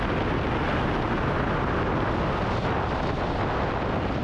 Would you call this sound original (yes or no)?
yes